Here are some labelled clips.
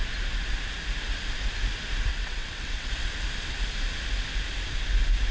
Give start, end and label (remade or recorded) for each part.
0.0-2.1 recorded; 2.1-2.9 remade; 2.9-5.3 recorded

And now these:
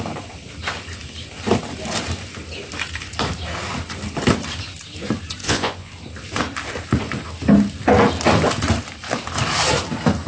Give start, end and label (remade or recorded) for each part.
0.0-5.4 recorded; 5.4-5.9 remade; 5.9-10.3 recorded

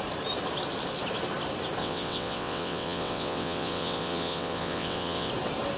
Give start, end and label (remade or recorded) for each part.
0.0-1.8 recorded; 1.8-5.3 remade; 5.3-5.8 recorded

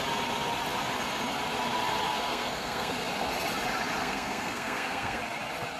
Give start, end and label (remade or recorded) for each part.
0.0-2.1 recorded; 2.1-3.0 remade; 3.0-4.0 recorded; 4.0-5.2 remade; 5.2-5.8 recorded

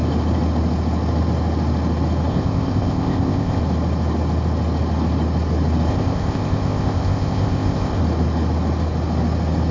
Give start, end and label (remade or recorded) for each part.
0.0-2.3 recorded; 2.3-3.6 remade; 3.6-5.9 recorded; 5.9-8.0 remade; 8.0-9.7 recorded

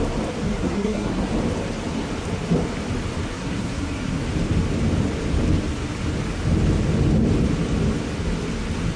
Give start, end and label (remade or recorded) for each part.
0.0-0.4 recorded; 0.4-1.3 remade; 1.3-3.3 recorded; 3.3-4.2 remade; 4.2-9.0 recorded

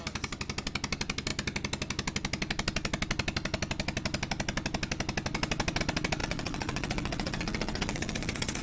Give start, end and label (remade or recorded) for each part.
0.0-6.2 recorded; 6.2-8.6 remade

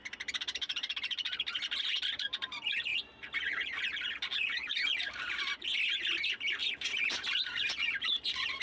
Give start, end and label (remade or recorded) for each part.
0.0-2.9 remade; 2.9-3.8 recorded; 3.8-8.6 remade